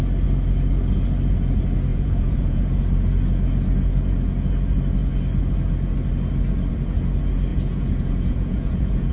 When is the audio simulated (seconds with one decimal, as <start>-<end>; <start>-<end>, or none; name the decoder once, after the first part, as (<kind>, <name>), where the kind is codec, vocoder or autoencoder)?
1.9-2.8 (vocoder, Vocos); 7.5-9.1